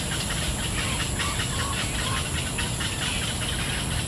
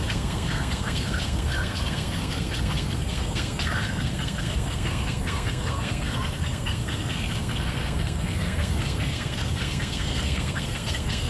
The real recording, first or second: first